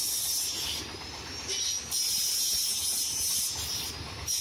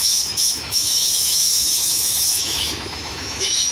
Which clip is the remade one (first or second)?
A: second